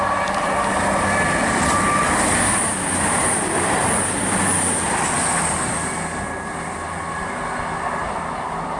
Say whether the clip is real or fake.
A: real